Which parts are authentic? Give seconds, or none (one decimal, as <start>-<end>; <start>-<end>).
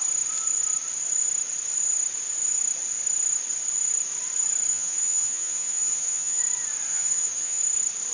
0.0-4.7; 6.4-6.9; 7.6-8.1